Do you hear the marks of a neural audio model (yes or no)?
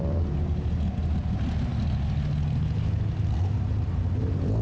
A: no